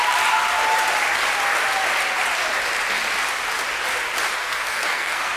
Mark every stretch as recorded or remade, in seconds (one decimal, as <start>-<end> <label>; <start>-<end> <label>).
0.0-4.4 recorded; 4.4-5.4 remade